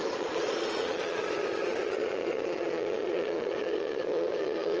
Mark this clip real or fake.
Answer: fake